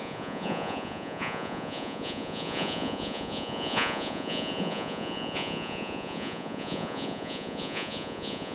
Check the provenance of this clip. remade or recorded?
remade